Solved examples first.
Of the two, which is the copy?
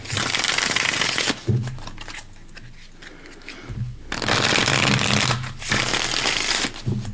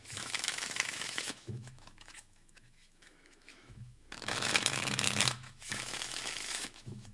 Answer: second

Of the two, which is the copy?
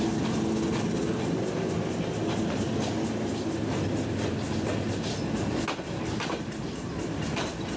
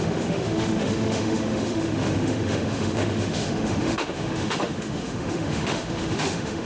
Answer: second